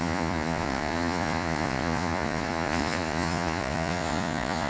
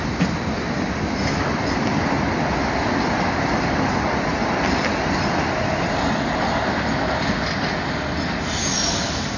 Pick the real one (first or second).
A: second